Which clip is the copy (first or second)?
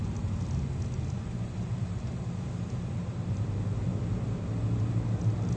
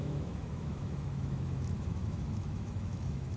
second